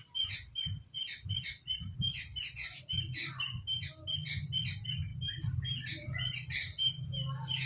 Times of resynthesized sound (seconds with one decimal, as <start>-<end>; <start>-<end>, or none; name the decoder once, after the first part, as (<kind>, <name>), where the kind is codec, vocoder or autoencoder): 0.0-5.1 (vocoder, BigVGAN v2)